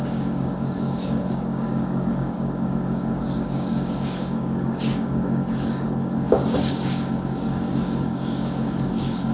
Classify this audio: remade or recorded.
remade